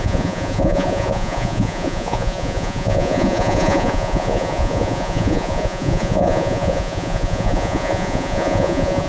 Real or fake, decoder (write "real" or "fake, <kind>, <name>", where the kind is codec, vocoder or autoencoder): fake, vocoder, Vocos